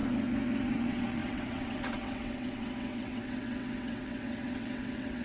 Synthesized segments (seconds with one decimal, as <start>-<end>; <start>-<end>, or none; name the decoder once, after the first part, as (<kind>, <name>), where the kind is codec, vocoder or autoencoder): 0.7-5.2 (vocoder, WaveNeXt)